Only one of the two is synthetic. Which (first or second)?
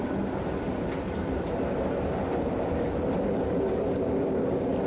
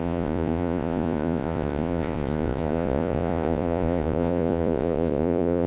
second